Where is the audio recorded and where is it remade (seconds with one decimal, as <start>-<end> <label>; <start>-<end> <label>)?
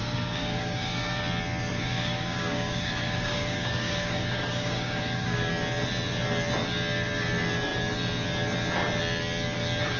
0.0-1.2 remade; 1.2-1.7 recorded; 1.7-5.5 remade; 5.5-10.0 recorded